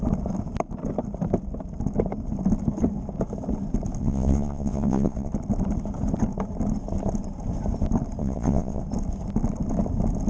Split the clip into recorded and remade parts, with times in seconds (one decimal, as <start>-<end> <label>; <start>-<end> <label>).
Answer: 0.0-4.0 recorded; 4.0-5.3 remade; 5.3-8.2 recorded; 8.2-8.8 remade; 8.8-10.3 recorded